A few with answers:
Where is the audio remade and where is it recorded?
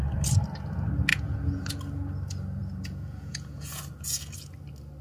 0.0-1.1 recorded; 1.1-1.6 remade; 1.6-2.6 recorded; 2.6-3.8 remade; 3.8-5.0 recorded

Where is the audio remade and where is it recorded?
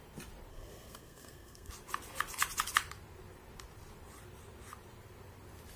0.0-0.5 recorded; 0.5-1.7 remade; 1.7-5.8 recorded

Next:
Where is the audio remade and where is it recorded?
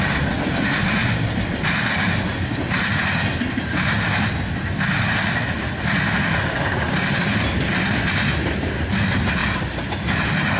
0.0-1.0 recorded; 1.0-1.6 remade; 1.6-2.3 recorded; 2.3-3.7 remade; 3.7-9.4 recorded; 9.4-9.9 remade; 9.9-10.6 recorded